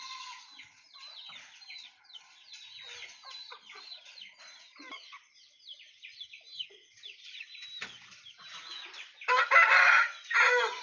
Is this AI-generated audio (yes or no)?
no